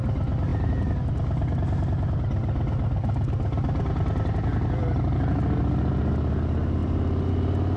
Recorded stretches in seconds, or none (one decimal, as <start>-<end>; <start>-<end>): 0.0-7.8